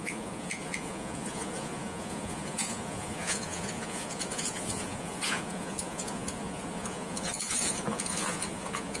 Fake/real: fake